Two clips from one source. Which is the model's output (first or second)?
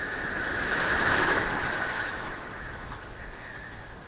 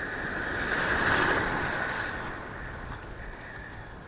first